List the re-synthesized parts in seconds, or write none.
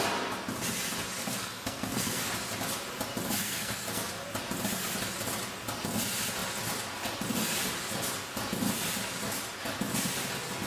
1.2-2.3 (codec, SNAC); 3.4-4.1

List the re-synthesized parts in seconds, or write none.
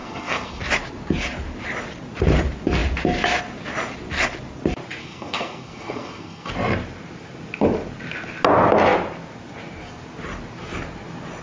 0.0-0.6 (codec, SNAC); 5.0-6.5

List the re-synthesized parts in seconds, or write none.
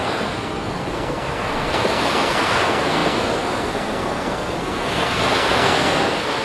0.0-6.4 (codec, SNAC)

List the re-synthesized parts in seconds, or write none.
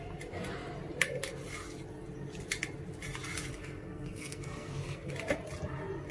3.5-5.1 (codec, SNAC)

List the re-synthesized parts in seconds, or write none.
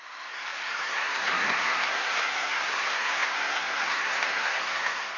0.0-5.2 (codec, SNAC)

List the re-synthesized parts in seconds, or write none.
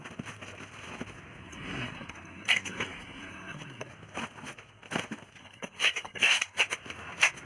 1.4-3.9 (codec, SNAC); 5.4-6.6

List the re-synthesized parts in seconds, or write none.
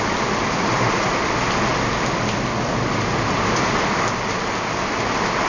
none